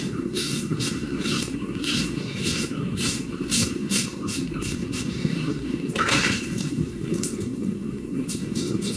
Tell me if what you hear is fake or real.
fake